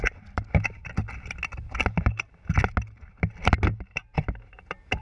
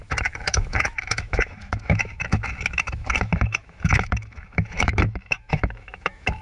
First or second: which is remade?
second